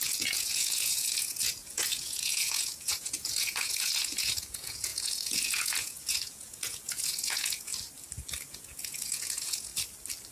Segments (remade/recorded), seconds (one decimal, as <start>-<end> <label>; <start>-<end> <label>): 0.0-7.7 remade; 7.7-8.5 recorded; 8.5-9.7 remade; 9.7-10.3 recorded

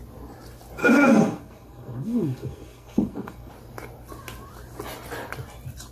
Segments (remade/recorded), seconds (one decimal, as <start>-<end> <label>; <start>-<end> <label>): 0.0-0.8 recorded; 0.8-3.5 remade; 3.5-5.9 recorded

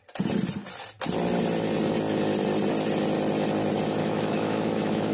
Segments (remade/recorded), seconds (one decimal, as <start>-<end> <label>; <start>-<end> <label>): 0.0-4.0 recorded; 4.0-5.1 remade

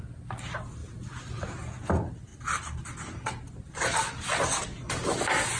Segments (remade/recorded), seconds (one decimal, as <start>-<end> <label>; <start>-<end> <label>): 0.0-0.8 recorded; 0.8-1.4 remade; 1.4-5.6 recorded